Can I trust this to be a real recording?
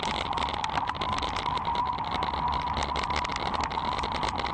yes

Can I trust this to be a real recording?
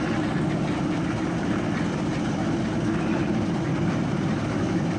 yes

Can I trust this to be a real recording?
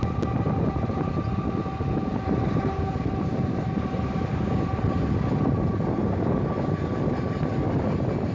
yes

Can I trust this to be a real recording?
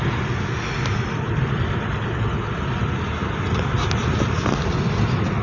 yes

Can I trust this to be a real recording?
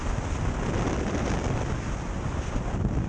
yes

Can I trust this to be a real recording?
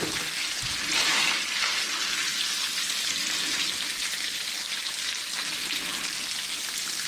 yes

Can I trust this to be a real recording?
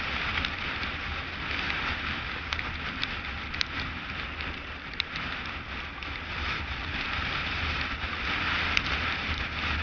yes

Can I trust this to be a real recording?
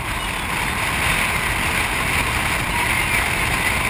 yes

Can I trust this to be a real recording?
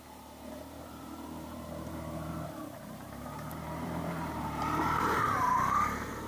no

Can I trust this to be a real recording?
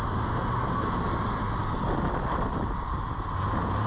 yes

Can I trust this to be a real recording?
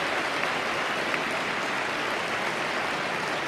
yes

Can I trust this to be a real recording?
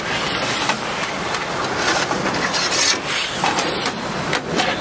yes